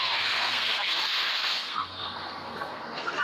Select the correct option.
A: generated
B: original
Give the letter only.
A